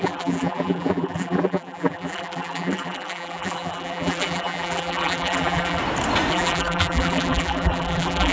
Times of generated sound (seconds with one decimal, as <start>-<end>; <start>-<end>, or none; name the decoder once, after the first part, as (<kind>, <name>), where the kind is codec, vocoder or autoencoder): 0.0-5.8 (vocoder, BigVGAN v2); 6.3-8.3

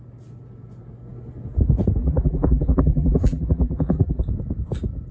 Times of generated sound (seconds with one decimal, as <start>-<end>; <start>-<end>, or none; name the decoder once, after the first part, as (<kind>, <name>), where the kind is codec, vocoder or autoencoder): 2.0-4.2 (vocoder, BigVGAN v2)

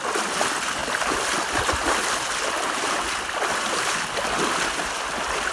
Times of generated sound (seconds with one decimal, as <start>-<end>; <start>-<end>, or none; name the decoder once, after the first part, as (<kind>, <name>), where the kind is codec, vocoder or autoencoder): none

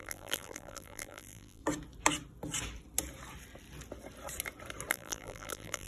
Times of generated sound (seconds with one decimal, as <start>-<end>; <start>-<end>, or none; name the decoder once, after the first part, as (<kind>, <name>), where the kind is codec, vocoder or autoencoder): 0.0-1.6 (vocoder, BigVGAN v2); 4.9-5.9